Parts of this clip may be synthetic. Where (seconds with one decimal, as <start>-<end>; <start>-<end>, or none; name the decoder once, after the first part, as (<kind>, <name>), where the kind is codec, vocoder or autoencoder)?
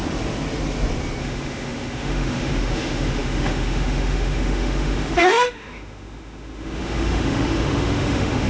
1.2-8.5 (autoencoder, DAC-VAE)